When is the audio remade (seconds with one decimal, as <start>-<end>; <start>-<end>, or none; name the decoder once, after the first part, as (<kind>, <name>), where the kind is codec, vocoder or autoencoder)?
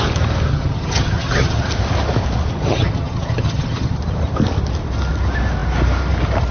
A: 0.5-1.7 (vocoder, HiFi-GAN); 2.5-4.0